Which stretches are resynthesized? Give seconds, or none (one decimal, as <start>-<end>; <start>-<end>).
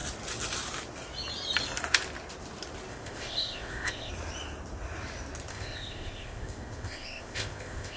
2.9-4.1; 5.5-8.0